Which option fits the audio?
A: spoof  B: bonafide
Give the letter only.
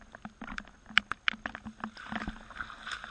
B